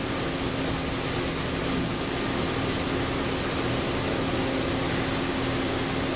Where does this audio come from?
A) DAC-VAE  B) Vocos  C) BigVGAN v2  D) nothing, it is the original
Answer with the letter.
D